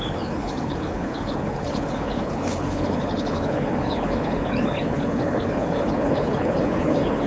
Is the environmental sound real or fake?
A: fake